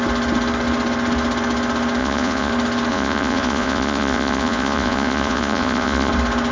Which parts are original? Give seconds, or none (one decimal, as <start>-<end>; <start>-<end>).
0.0-2.0; 2.5-2.9; 6.1-6.5